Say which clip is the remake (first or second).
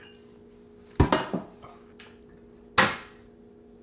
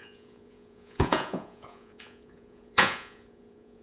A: second